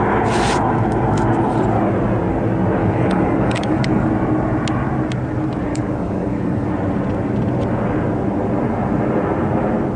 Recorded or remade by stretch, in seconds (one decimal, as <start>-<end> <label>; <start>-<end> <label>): 0.0-2.8 recorded; 2.8-4.1 remade; 4.1-5.7 recorded; 5.7-6.7 remade; 6.7-10.0 recorded